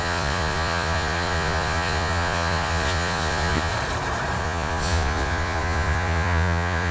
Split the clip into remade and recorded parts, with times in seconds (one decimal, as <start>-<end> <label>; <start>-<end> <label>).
0.0-3.7 remade; 3.7-4.4 recorded; 4.4-6.9 remade